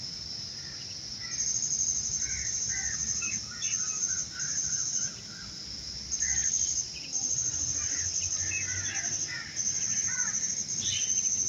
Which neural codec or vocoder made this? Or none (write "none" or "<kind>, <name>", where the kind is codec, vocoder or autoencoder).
none